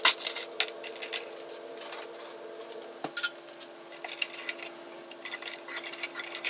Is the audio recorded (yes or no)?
yes